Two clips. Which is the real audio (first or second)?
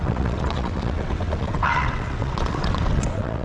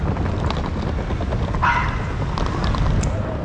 second